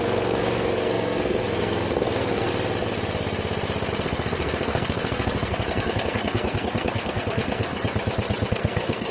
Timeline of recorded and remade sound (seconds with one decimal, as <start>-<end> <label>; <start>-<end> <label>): 0.0-2.5 remade; 2.5-3.9 recorded; 3.9-7.7 remade; 7.7-8.5 recorded; 8.5-9.1 remade